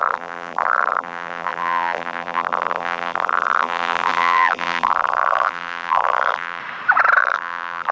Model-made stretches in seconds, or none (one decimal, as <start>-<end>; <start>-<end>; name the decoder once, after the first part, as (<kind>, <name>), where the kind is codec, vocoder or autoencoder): 0.0-6.6 (vocoder, BigVGAN v2); 7.2-7.9